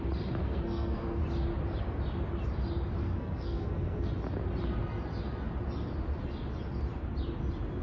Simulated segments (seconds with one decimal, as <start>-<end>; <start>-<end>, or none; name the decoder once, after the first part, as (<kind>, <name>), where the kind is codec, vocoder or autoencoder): 0.4-1.2 (codec, SNAC); 3.0-4.1

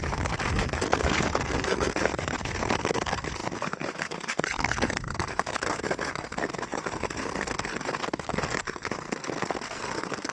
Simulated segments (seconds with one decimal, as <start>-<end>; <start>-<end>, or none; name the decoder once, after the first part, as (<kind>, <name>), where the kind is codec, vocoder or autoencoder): 0.0-10.3 (codec, SNAC)

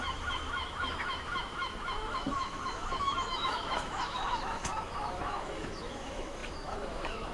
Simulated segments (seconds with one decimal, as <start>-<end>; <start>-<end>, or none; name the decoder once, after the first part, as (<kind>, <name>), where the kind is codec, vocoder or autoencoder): 0.0-7.3 (autoencoder, DAC-VAE)

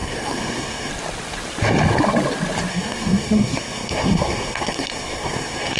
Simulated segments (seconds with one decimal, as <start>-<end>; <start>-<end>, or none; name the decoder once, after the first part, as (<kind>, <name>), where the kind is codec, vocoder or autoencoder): 0.0-0.9 (codec, SNAC); 2.7-5.8

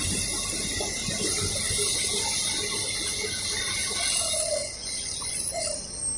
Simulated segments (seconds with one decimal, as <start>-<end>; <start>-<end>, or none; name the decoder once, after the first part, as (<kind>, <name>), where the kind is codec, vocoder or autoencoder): 4.6-5.6 (vocoder, Vocos)